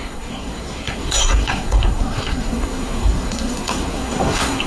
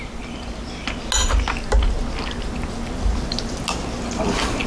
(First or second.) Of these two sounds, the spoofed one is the first